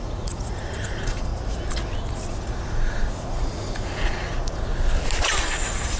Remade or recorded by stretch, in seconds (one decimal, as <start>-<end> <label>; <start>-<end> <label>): 0.0-1.3 remade; 1.3-2.3 recorded; 2.3-4.7 remade; 4.7-5.4 recorded; 5.4-6.0 remade

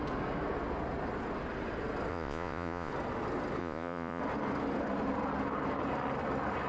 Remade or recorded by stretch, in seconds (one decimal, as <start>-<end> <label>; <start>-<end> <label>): 0.0-2.1 recorded; 2.1-2.9 remade; 2.9-3.6 recorded; 3.6-4.2 remade; 4.2-6.7 recorded

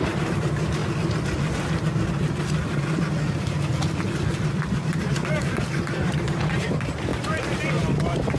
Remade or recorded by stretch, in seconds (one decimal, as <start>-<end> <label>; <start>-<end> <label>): 0.0-0.8 remade; 0.8-3.3 recorded; 3.3-3.7 remade; 3.7-4.5 recorded; 4.5-8.4 remade

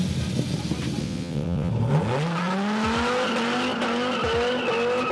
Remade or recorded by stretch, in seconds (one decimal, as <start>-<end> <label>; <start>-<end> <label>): 0.0-1.0 recorded; 1.0-1.7 remade; 1.7-5.1 recorded

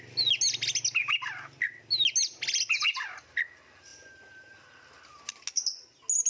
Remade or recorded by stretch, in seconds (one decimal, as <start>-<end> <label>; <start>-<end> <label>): 0.0-6.3 recorded